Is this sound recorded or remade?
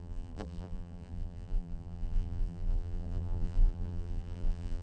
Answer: remade